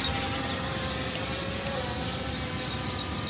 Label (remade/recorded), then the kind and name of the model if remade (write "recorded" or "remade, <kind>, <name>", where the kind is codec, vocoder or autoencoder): recorded